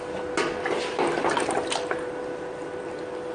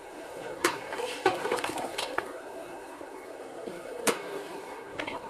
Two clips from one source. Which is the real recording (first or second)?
first